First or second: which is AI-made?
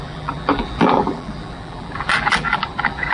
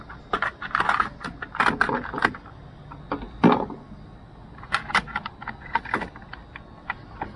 first